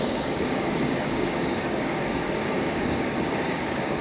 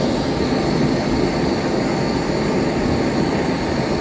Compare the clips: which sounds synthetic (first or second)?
first